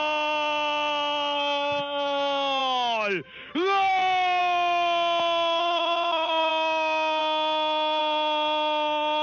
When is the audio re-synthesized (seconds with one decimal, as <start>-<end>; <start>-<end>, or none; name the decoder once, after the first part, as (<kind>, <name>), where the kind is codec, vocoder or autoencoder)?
5.6-6.5 (vocoder, HiFi-GAN)